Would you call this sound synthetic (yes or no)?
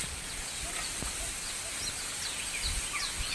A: no